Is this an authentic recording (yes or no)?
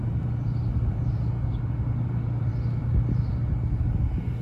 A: yes